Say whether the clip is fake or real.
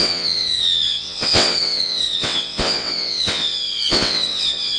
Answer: fake